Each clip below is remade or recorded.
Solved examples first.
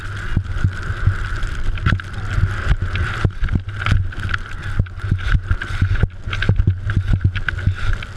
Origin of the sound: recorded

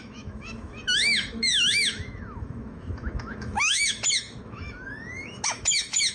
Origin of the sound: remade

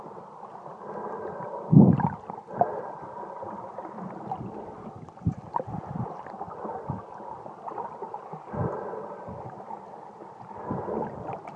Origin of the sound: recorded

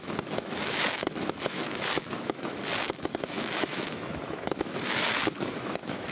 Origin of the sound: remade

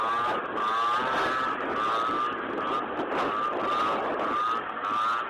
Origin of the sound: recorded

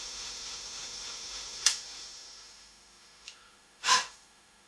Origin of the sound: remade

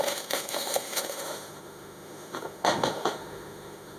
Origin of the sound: remade